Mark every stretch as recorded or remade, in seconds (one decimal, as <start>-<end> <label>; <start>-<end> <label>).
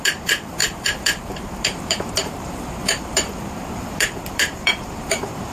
0.0-5.5 remade